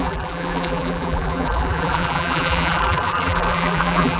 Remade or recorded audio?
remade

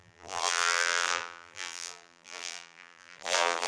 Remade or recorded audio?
remade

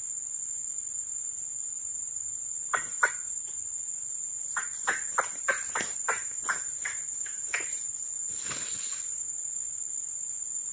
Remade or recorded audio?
remade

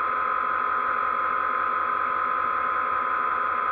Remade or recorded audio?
recorded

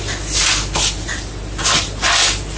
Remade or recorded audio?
remade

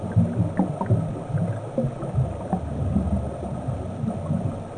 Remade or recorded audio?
recorded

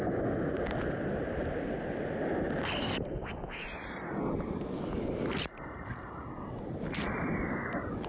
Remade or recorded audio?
recorded